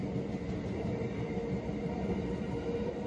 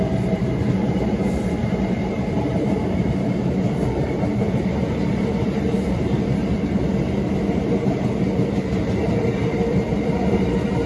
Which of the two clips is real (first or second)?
first